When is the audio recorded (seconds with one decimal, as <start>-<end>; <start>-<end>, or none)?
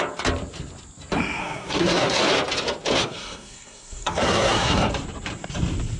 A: 0.0-1.4; 2.2-3.0; 4.9-6.0